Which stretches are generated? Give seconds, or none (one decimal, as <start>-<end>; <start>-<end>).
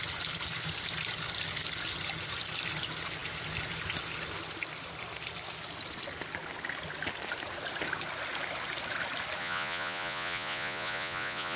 9.4-11.6